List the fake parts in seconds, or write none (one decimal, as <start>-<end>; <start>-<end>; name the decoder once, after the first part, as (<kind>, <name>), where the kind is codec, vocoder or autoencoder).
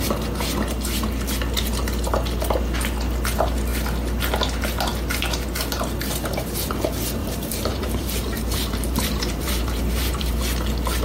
7.2-10.4 (vocoder, BigVGAN v2)